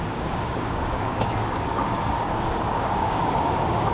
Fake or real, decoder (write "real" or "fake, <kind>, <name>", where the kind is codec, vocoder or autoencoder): fake, codec, DAC